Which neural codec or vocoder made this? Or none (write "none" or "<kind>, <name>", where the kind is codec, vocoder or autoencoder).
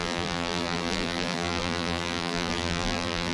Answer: vocoder, BigVGAN v2